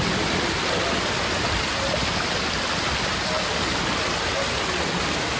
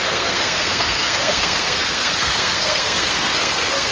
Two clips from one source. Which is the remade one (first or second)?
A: second